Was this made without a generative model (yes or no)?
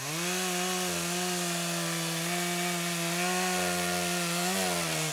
yes